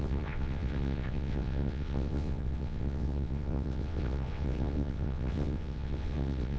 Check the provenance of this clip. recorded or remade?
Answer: remade